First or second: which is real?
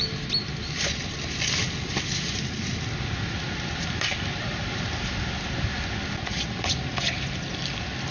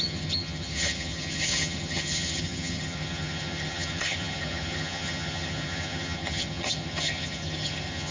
first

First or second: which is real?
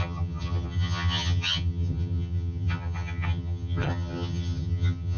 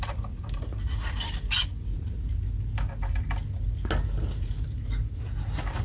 second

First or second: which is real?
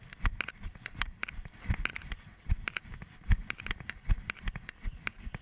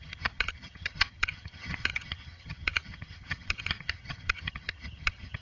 first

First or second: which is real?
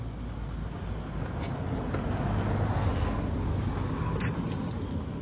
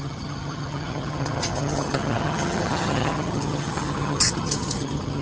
first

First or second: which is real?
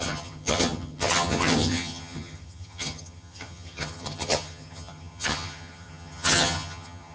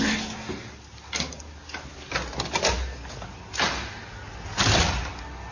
second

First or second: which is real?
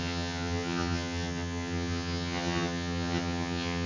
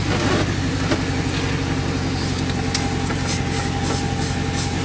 second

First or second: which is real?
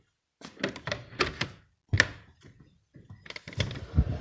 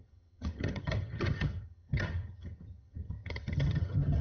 first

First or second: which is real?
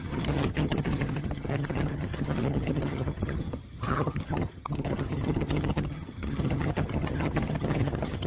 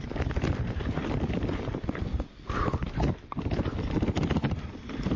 second